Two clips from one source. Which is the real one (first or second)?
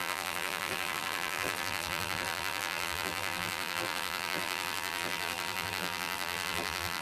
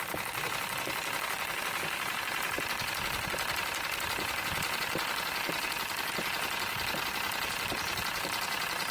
second